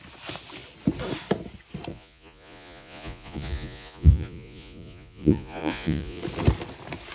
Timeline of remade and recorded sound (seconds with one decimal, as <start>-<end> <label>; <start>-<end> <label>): 0.0-1.9 recorded; 1.9-6.2 remade; 6.2-7.1 recorded